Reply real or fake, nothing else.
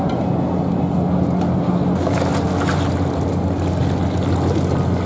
real